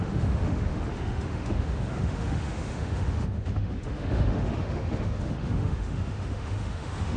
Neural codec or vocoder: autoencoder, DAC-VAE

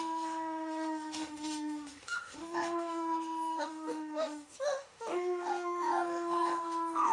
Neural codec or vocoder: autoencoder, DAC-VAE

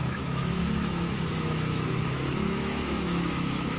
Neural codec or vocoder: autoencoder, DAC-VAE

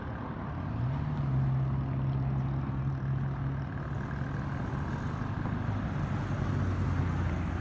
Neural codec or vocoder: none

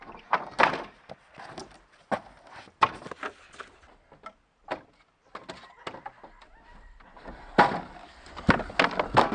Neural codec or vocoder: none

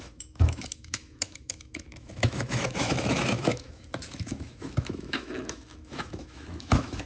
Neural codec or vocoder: autoencoder, DAC-VAE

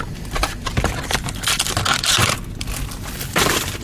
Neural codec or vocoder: none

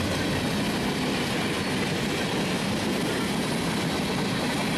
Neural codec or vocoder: none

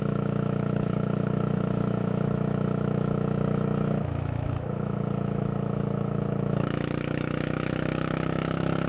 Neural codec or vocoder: autoencoder, DAC-VAE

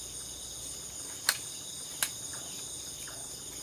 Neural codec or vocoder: none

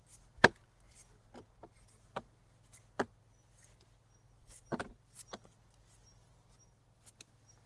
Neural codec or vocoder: none